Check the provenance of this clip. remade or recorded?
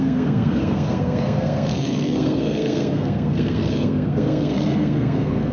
remade